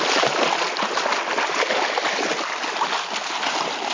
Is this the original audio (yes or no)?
yes